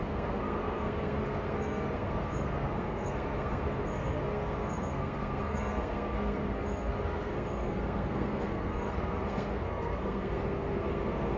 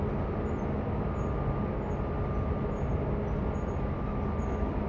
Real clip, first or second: second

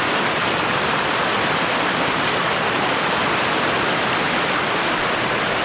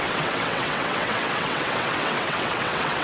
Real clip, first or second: first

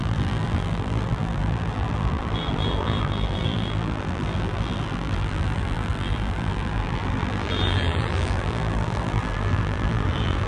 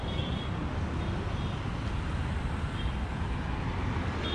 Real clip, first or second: second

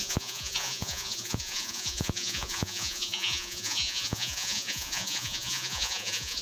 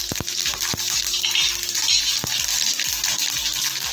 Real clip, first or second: second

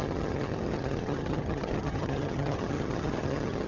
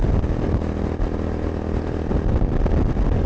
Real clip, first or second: second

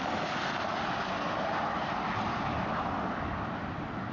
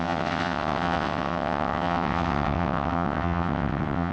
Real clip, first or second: first